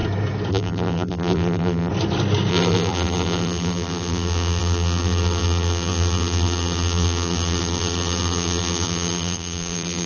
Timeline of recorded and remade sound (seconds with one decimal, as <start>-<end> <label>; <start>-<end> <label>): 0.0-0.5 recorded; 0.5-1.9 remade; 1.9-2.5 recorded; 2.5-10.1 remade